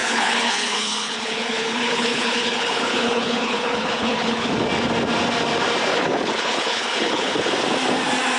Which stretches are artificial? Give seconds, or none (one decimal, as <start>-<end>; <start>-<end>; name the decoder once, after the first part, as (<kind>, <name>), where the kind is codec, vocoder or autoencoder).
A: 0.0-4.5 (codec, HILCodec); 5.9-7.5